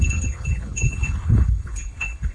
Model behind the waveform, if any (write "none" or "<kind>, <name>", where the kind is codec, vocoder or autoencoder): codec, HILCodec